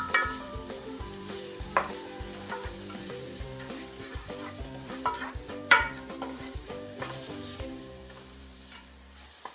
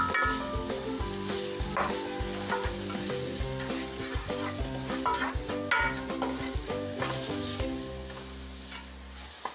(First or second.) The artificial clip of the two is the first